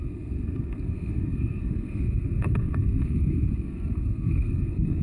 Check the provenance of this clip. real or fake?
fake